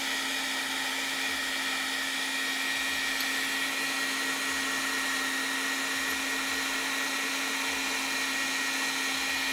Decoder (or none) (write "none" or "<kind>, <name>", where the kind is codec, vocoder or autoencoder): none